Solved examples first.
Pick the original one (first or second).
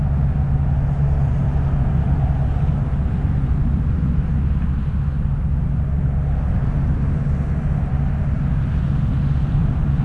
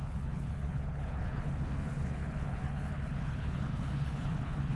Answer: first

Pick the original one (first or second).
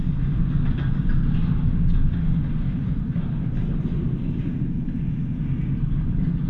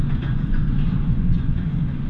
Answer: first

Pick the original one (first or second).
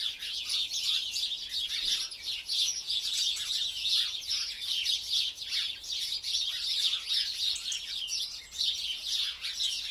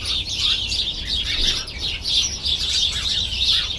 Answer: second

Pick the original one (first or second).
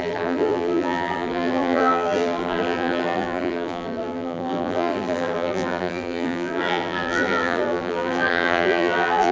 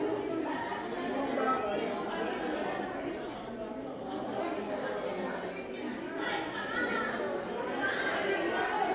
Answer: second